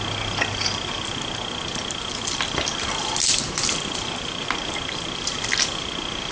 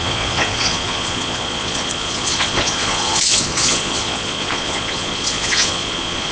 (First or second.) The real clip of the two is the first